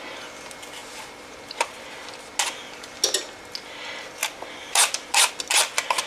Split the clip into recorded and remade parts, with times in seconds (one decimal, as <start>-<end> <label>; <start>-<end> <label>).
0.0-0.8 recorded; 0.8-1.9 remade; 1.9-4.2 recorded; 4.2-5.3 remade; 5.3-6.1 recorded